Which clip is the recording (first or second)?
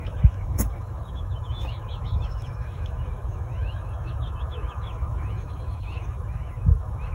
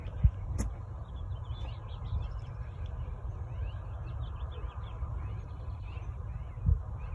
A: second